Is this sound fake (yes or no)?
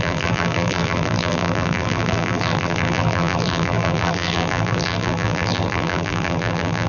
yes